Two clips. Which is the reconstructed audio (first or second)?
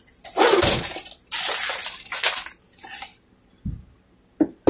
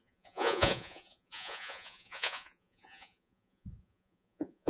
second